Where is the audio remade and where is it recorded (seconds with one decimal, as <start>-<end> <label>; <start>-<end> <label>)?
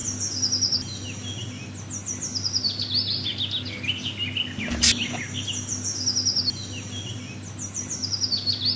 0.0-8.8 recorded